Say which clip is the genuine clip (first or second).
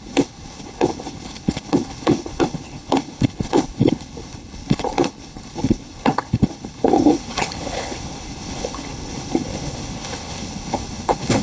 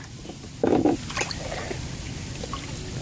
second